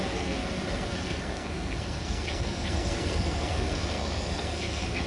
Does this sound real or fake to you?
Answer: fake